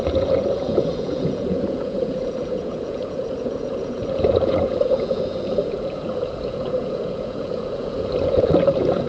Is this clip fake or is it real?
fake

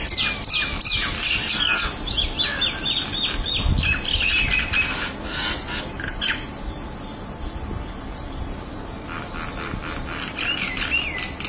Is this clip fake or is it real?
real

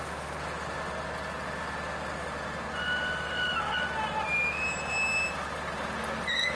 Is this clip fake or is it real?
real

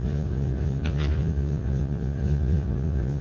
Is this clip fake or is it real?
fake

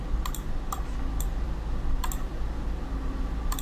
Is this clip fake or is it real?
real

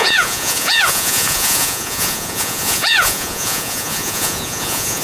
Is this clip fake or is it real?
fake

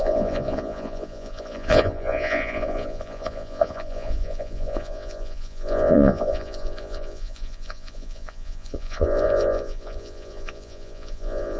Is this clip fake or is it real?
fake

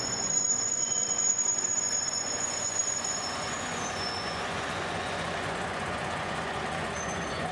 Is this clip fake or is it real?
fake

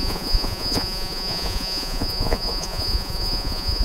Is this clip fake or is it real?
fake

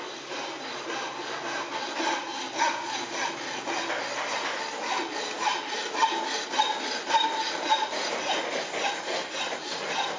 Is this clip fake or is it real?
real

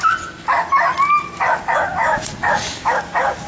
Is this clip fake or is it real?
real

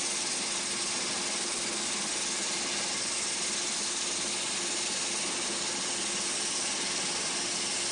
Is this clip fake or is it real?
real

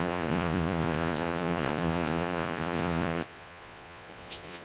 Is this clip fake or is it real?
fake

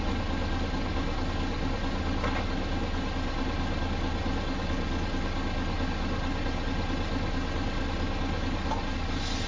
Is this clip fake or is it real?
real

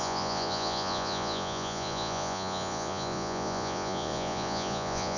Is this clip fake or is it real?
fake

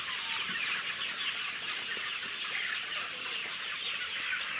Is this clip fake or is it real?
real